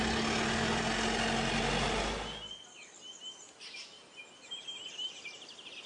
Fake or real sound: real